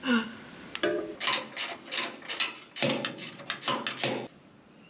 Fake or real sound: real